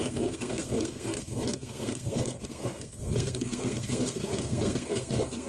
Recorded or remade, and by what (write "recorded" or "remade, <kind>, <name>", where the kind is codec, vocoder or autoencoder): remade, codec, SNAC